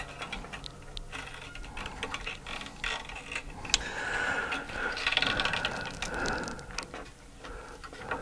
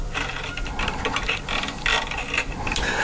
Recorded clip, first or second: first